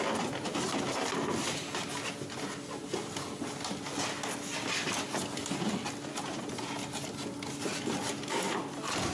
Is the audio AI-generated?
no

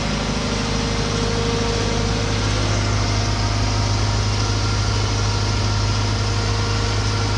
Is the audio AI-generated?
no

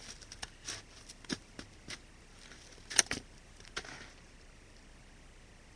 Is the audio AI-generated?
no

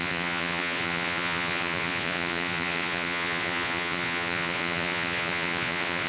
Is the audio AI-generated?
yes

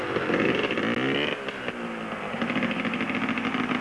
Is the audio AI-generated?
no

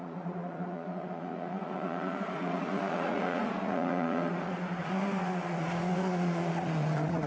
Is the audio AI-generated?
yes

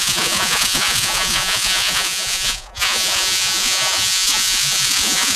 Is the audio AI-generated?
yes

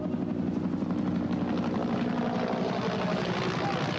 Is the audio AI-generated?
no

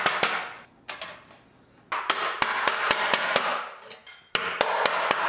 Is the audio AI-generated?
no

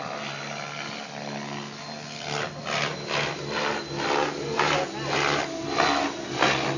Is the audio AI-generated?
no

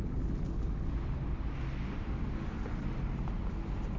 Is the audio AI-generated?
no